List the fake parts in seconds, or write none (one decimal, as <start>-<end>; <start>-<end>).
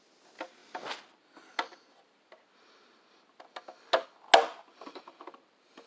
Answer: 4.5-5.2